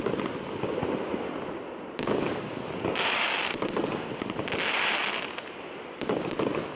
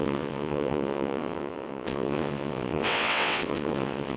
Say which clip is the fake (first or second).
second